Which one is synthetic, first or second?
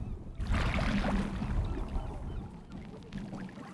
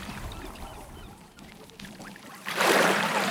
second